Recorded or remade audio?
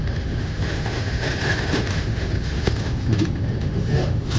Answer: remade